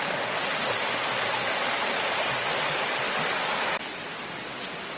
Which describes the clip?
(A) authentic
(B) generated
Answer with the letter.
A